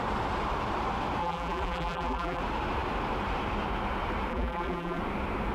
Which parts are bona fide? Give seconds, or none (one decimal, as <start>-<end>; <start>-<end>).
0.0-1.2; 2.4-4.3; 5.0-5.5